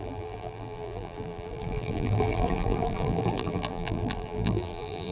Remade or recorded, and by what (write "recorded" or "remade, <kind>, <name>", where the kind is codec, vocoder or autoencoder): remade, vocoder, BigVGAN v2